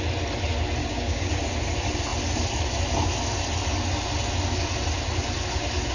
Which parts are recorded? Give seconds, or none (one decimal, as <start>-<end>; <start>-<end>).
0.0-0.8; 1.3-5.9